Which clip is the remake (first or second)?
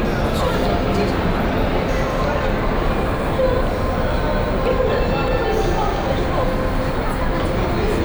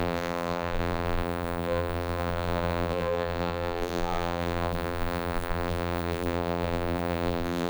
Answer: second